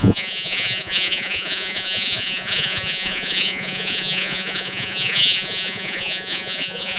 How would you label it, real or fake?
fake